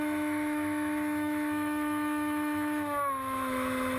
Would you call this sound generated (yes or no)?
yes